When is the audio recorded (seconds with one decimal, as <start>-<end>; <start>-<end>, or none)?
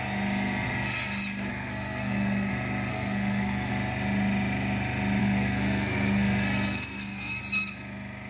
0.0-1.5; 2.5-2.9; 3.7-5.2; 7.4-8.3